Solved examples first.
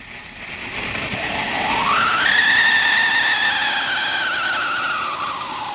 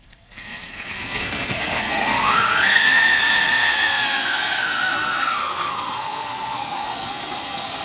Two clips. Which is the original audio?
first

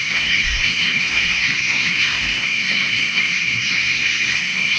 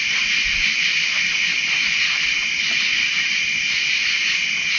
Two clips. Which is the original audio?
second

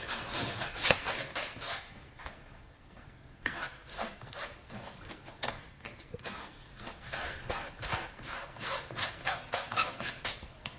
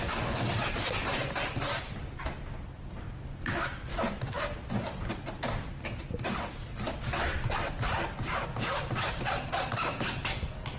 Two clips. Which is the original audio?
second